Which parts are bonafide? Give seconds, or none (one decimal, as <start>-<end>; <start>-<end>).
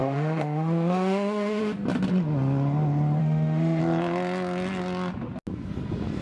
1.6-3.2; 3.8-6.2